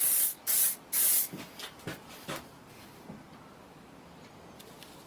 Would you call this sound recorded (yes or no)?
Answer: no